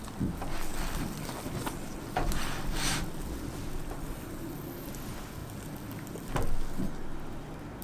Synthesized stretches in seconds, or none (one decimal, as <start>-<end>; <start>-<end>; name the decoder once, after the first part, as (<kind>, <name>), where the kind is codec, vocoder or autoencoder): 0.7-4.5 (vocoder, BigVGAN v2)